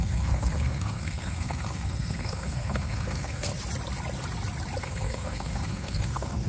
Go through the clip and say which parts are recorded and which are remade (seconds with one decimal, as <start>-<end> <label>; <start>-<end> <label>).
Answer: 0.0-3.5 remade; 3.5-4.8 recorded; 4.8-6.5 remade